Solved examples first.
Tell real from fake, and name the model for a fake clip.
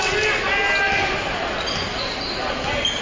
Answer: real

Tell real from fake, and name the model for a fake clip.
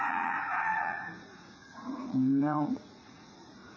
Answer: fake, vocoder, Vocos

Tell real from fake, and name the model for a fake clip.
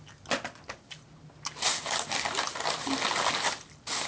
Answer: real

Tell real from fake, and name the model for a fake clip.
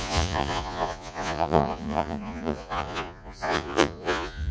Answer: fake, vocoder, Vocos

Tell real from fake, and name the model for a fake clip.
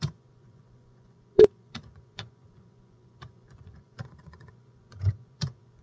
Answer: fake, vocoder, Vocos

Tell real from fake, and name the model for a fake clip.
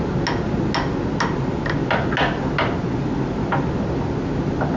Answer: real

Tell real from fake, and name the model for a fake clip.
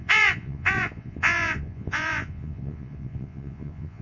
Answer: fake, vocoder, Vocos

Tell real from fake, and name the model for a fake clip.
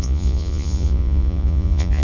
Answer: fake, vocoder, Vocos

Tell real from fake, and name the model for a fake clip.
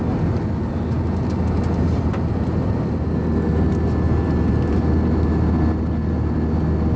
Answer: real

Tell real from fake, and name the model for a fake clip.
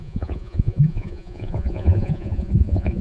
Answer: fake, vocoder, Vocos